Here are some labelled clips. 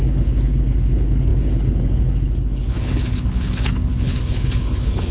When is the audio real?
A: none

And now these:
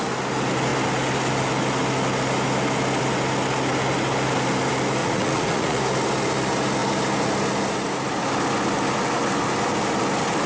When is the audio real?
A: 0.0-5.0; 5.8-10.5

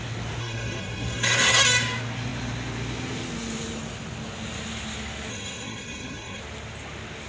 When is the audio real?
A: 0.0-0.4; 1.6-5.3; 6.4-7.3

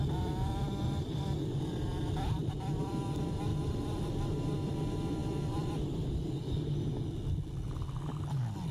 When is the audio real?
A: 0.0-8.7

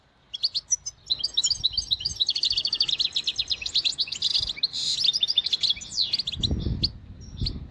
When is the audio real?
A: 0.0-7.7

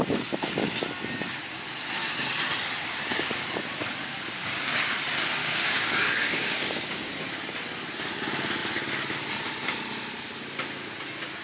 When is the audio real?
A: 0.0-4.4; 4.9-5.4; 7.1-11.4